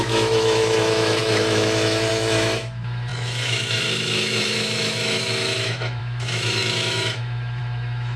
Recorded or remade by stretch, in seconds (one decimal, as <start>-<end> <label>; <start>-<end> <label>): 0.0-8.2 remade